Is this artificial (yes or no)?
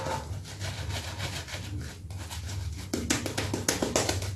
no